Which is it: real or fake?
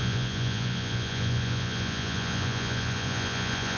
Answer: fake